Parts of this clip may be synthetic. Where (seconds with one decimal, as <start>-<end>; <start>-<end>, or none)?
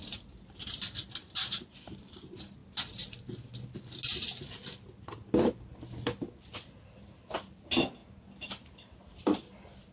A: none